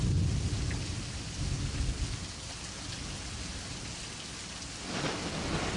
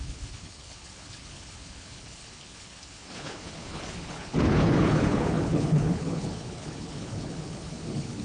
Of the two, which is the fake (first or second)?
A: second